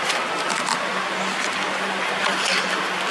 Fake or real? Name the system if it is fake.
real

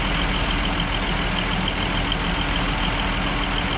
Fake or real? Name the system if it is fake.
real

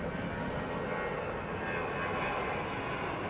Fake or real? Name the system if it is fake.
real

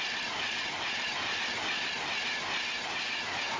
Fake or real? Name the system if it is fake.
real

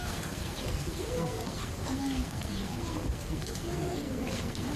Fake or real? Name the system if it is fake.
fake, codec, SNAC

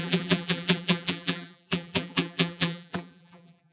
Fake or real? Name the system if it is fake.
fake, vocoder, BigVGAN v2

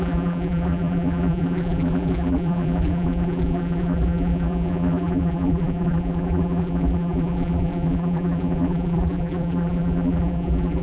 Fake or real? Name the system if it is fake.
fake, vocoder, BigVGAN v2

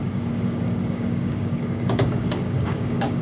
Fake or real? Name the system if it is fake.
fake, codec, DAC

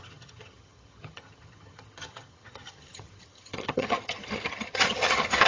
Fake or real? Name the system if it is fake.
fake, vocoder, HiFi-GAN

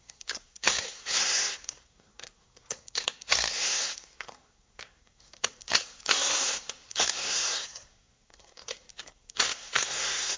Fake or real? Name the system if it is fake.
fake, codec, SNAC